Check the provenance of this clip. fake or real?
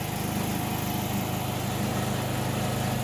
real